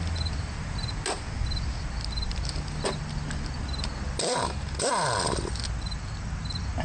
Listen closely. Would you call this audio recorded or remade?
recorded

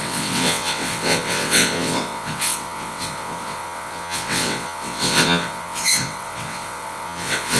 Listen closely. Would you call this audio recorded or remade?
remade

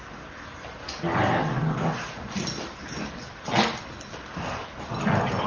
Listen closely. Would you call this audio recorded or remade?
recorded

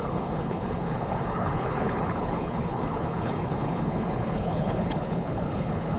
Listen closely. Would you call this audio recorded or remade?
remade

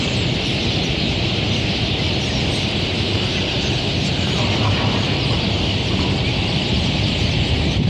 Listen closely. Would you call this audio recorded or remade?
remade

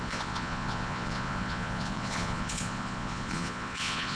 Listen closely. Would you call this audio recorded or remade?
remade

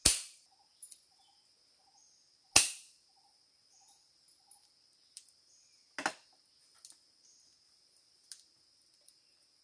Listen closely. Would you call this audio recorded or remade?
recorded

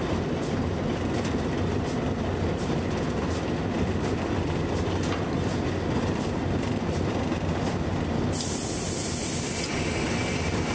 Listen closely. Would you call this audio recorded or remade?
recorded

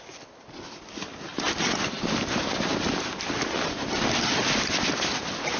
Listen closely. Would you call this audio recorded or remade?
remade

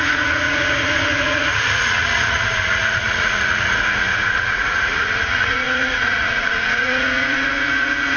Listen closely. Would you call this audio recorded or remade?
remade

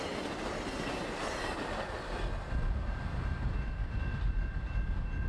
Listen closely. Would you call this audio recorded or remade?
recorded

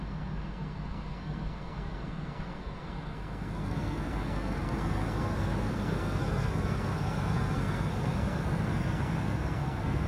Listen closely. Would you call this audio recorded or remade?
remade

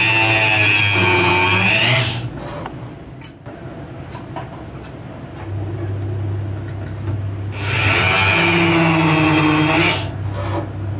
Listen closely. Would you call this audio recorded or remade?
recorded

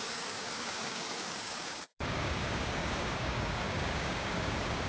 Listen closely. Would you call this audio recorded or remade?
remade